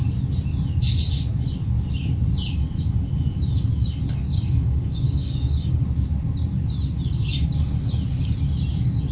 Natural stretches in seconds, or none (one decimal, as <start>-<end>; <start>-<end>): 0.0-4.3; 5.8-9.1